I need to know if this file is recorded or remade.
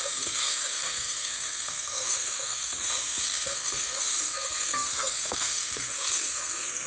remade